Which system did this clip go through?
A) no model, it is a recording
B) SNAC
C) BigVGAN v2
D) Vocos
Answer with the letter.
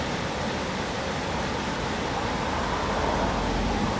A